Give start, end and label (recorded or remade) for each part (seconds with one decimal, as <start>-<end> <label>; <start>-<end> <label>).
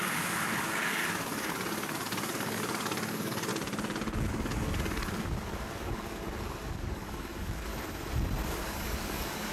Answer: 0.0-3.5 remade; 3.5-4.3 recorded; 4.3-7.7 remade; 7.7-8.5 recorded; 8.5-9.5 remade